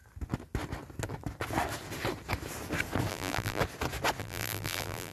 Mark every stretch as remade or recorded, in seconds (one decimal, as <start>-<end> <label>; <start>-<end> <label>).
0.0-3.1 recorded; 3.1-3.6 remade; 3.6-4.2 recorded; 4.2-5.1 remade